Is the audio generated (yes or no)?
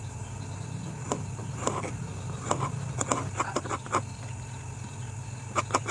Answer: no